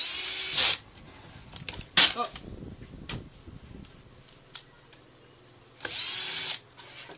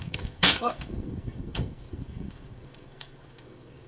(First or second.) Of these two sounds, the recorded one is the first